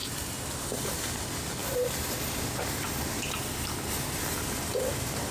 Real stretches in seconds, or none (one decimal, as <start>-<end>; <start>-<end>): 0.0-5.3